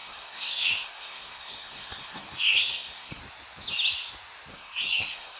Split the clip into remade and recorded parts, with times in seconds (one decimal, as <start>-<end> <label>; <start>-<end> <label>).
0.0-3.2 remade; 3.2-4.5 recorded; 4.5-5.4 remade